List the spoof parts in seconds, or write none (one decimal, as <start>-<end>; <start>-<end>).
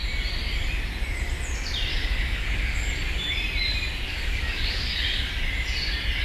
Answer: 1.9-2.9; 4.1-5.3